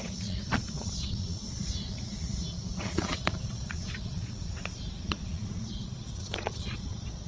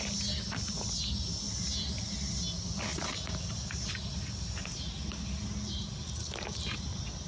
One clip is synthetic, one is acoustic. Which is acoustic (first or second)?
second